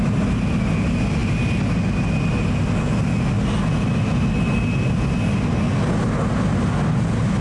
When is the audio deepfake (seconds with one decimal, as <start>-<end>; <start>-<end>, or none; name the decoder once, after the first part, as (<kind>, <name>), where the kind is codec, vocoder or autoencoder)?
none